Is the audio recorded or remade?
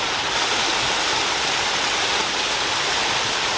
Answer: recorded